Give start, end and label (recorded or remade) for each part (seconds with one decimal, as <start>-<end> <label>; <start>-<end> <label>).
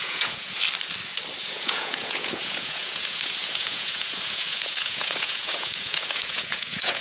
0.0-0.6 remade; 0.6-1.4 recorded; 1.4-7.0 remade